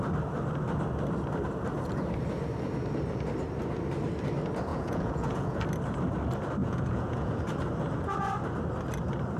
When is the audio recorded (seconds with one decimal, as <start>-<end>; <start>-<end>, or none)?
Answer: 0.0-4.7; 5.6-6.6; 7.4-9.4